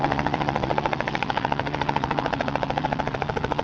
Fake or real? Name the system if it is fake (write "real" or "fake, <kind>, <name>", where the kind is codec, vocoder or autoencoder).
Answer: fake, vocoder, WaveNeXt